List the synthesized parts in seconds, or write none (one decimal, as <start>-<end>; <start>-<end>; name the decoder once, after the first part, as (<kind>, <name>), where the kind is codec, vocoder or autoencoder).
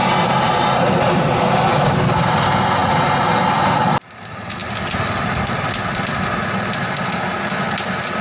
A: 0.0-1.4 (vocoder, BigVGAN v2)